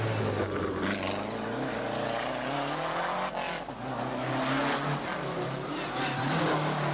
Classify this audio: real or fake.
real